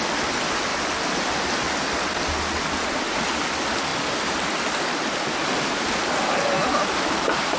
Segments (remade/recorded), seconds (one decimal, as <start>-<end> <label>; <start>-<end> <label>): 0.0-7.6 recorded